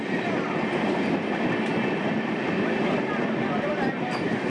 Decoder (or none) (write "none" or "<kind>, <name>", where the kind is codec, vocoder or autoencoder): none